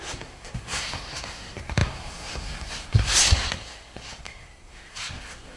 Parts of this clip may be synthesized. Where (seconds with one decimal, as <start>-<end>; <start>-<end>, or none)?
0.0-5.6